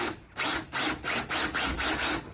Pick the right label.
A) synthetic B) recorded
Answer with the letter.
B